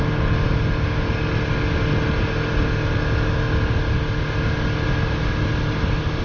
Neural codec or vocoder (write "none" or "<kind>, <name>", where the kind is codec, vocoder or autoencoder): none